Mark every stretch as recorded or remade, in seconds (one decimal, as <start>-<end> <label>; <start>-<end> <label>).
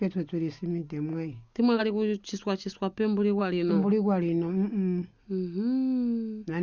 0.0-1.1 recorded; 1.1-1.8 remade; 1.8-3.4 recorded; 3.4-3.9 remade; 3.9-6.6 recorded